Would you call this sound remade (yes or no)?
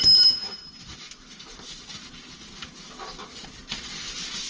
no